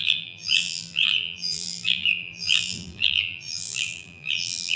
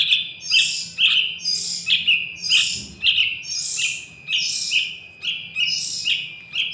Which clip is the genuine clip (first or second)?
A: second